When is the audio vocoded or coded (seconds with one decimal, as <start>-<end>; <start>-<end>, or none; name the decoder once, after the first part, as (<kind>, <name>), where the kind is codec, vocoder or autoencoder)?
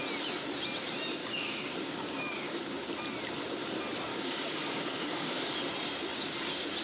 1.2-2.6 (codec, DAC); 4.1-5.5